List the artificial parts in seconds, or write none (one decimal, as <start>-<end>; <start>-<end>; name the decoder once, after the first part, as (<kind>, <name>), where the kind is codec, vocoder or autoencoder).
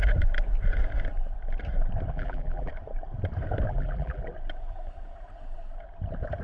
2.1-2.7 (vocoder, BigVGAN v2); 3.7-4.2